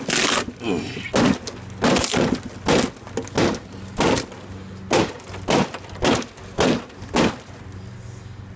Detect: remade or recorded recorded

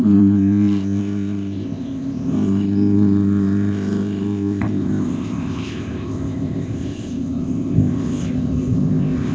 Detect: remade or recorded remade